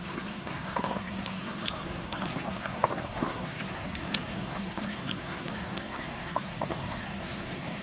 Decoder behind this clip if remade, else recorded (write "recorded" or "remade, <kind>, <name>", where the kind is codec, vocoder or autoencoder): remade, codec, SNAC